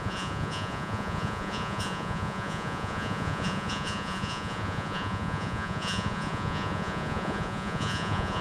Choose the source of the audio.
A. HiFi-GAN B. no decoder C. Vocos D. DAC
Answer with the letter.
C